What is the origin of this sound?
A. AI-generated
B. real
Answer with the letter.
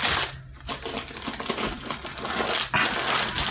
B